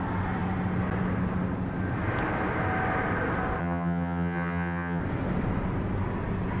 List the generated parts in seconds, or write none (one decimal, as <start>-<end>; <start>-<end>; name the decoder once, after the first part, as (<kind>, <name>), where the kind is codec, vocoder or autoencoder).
3.6-5.0 (vocoder, HiFi-GAN)

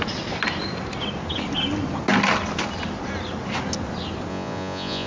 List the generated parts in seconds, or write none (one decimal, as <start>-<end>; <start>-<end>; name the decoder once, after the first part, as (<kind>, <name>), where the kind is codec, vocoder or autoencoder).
4.3-5.1 (vocoder, Vocos)

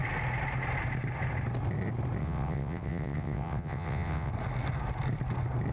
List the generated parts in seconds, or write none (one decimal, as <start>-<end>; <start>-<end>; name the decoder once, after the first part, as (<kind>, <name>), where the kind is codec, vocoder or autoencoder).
2.2-4.3 (vocoder, WaveNeXt)

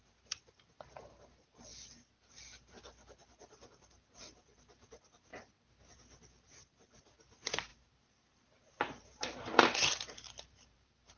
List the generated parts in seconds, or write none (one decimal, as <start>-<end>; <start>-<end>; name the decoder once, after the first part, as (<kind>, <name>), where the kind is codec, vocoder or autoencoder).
0.0-1.7 (vocoder, BigVGAN v2); 4.2-5.3; 5.9-11.2

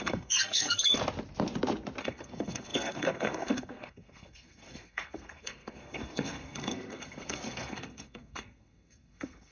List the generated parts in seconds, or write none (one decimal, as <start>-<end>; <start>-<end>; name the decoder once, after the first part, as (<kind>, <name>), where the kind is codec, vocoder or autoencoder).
0.0-1.0 (codec, SNAC); 2.0-9.5

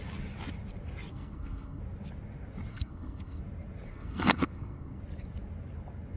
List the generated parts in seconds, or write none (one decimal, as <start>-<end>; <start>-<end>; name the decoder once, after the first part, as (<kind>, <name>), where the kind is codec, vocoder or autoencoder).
1.1-1.8 (codec, SNAC); 2.7-3.4; 3.9-5.0

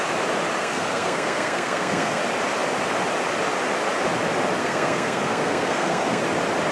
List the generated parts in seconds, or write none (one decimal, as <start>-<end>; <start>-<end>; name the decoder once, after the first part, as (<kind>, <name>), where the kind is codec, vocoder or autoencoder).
0.6-2.2 (codec, SNAC); 4.6-6.2